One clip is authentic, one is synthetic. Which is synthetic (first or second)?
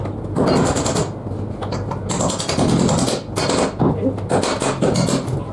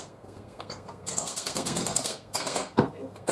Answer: second